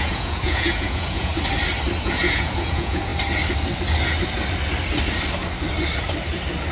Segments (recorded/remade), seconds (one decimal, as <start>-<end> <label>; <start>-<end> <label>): 0.0-1.3 remade; 1.3-2.0 recorded; 2.0-3.1 remade; 3.1-6.7 recorded